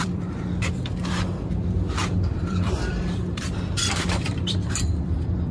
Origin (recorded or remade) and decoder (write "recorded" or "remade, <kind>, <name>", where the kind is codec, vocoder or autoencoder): remade, vocoder, BigVGAN v2